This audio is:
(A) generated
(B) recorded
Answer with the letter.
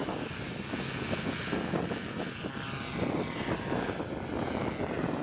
B